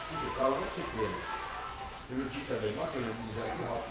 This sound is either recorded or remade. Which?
remade